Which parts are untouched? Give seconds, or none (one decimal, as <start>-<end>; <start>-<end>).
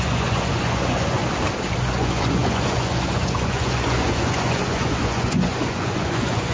1.2-1.8